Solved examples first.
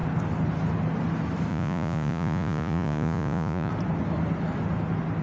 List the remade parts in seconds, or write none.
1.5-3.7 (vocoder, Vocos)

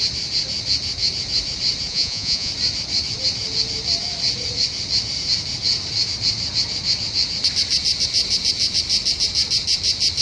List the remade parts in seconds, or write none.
1.9-2.5 (vocoder, Vocos)

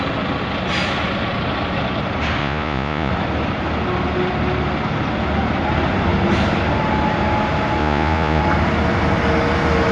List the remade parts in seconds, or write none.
2.4-3.1 (vocoder, Vocos); 7.8-8.4

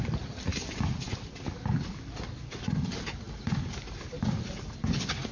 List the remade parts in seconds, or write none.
none